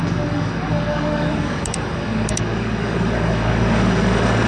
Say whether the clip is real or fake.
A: fake